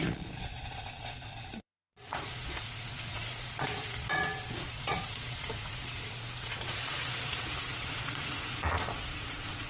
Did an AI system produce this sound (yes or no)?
yes